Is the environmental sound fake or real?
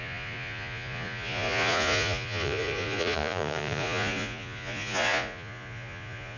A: fake